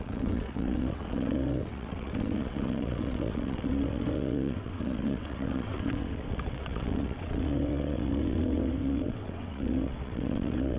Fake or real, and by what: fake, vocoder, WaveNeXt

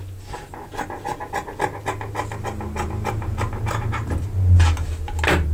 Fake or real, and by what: real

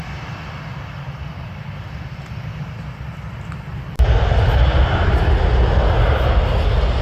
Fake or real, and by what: real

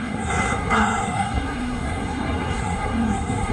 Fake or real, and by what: fake, codec, SNAC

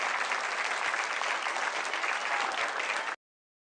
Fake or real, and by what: real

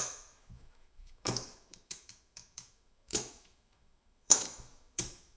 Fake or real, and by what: fake, autoencoder, DAC-VAE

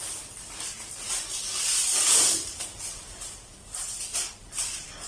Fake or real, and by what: real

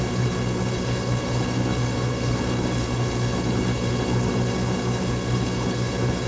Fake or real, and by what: fake, codec, HILCodec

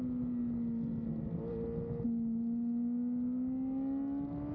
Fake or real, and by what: real